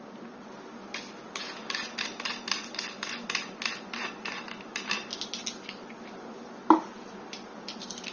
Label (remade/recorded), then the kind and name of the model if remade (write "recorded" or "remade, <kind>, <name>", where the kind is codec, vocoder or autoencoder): recorded